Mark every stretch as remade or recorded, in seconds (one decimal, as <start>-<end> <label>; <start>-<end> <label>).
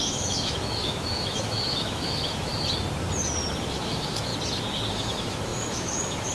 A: 0.0-2.5 remade; 2.5-3.6 recorded; 3.6-4.3 remade; 4.3-4.9 recorded; 4.9-6.3 remade